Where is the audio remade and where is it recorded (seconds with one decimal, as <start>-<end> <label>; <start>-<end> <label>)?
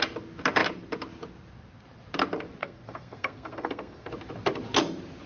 0.0-2.6 recorded; 2.6-4.1 remade; 4.1-5.3 recorded